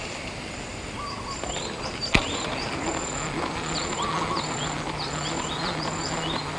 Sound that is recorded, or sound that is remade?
recorded